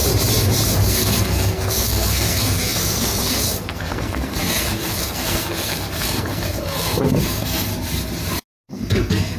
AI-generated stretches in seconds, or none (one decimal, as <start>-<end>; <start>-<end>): 0.7-7.7; 8.7-9.4